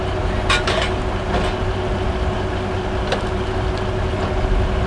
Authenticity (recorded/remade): recorded